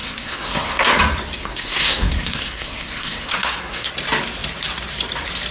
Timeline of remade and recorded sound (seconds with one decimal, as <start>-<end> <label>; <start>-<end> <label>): 0.0-0.9 remade; 0.9-1.4 recorded; 1.4-3.9 remade; 3.9-5.5 recorded